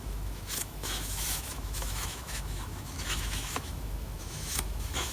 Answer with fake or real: fake